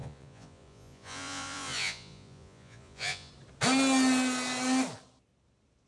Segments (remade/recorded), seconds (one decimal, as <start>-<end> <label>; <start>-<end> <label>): 0.0-3.3 remade; 3.3-5.9 recorded